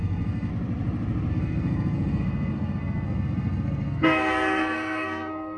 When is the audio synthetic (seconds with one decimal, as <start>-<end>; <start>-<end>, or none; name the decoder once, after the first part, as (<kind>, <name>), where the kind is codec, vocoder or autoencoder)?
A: 0.0-0.5 (codec, SNAC); 1.3-5.6